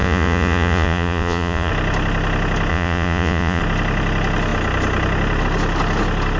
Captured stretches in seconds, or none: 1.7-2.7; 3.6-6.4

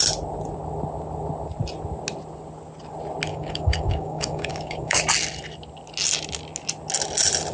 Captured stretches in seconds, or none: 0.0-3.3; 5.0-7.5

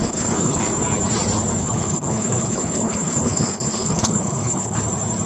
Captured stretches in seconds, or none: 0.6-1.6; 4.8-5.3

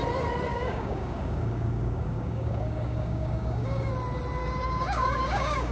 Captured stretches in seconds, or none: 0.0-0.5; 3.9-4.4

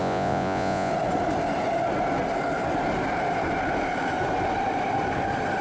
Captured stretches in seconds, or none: 0.9-5.6

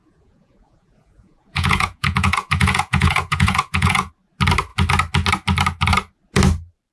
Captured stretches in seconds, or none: 4.1-6.9